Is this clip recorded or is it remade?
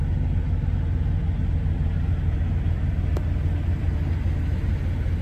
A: recorded